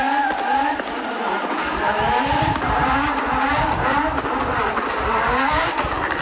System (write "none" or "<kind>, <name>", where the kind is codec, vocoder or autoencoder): none